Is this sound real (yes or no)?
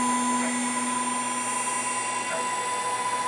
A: yes